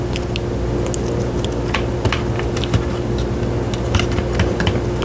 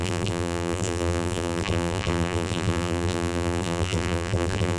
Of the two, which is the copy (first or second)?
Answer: second